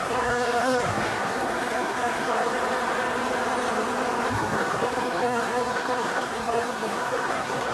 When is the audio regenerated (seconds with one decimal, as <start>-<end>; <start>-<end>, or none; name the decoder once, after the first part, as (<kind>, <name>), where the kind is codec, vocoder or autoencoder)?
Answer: 0.0-2.5 (codec, SNAC); 4.3-7.7